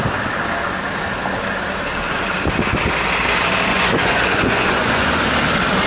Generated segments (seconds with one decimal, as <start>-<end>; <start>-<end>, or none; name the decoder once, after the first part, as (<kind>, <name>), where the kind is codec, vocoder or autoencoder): 3.7-5.3 (vocoder, Vocos)

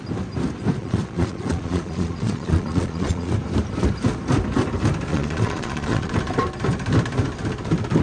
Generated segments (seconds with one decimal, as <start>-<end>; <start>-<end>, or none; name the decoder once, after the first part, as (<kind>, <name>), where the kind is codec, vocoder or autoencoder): 0.8-3.3 (vocoder, Vocos); 5.1-6.1

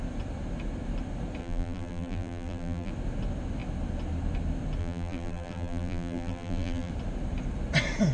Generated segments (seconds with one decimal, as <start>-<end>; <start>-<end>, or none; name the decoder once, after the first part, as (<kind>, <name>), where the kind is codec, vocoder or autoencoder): 1.4-2.9 (vocoder, BigVGAN v2); 4.8-6.9

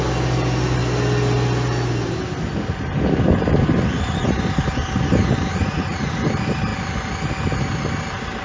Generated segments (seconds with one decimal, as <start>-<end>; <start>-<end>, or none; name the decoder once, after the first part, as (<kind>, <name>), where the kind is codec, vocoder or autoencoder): 5.5-6.2 (vocoder, Vocos)

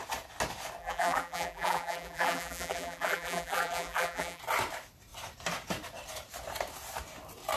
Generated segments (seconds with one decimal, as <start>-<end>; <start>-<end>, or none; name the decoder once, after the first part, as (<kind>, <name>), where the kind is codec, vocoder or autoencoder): 0.8-4.4 (vocoder, BigVGAN v2)

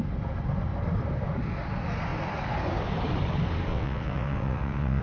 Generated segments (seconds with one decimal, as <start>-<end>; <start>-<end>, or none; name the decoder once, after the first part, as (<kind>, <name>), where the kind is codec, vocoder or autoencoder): 3.7-5.0 (vocoder, WaveNeXt)

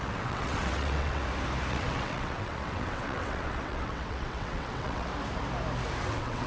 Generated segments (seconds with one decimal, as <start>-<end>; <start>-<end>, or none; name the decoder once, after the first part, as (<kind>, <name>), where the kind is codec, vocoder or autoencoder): 0.0-1.2 (vocoder, WaveNeXt); 1.7-5.1; 6.0-6.5

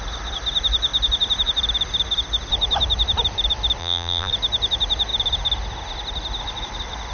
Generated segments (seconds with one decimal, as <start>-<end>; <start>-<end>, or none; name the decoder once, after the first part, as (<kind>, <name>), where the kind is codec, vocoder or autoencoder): 3.8-4.3 (vocoder, BigVGAN v2)